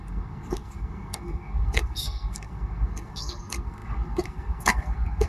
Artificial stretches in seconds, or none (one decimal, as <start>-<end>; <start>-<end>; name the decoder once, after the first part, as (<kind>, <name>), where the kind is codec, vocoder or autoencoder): 0.0-5.3 (codec, SNAC)